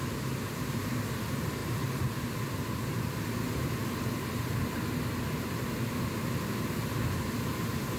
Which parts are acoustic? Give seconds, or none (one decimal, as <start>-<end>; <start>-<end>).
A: 0.0-8.0